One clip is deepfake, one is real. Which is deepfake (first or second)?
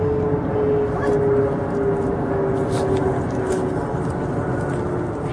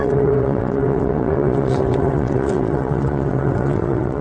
second